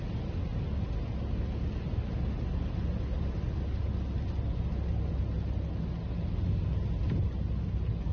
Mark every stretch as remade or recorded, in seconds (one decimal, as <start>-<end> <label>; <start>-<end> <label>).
0.0-8.1 recorded